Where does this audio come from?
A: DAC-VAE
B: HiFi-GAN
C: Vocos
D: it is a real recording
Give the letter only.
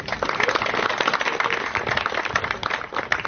D